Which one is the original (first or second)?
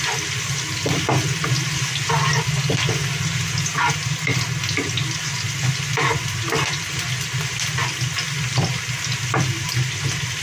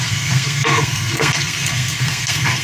first